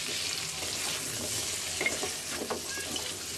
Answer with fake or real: real